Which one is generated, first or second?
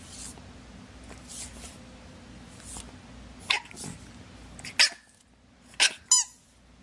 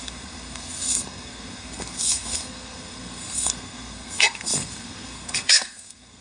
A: second